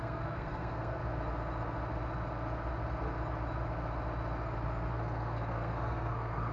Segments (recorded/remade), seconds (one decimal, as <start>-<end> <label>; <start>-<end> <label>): 0.0-1.0 remade; 1.0-4.9 recorded; 4.9-6.5 remade